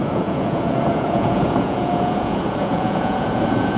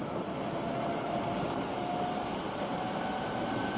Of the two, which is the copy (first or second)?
first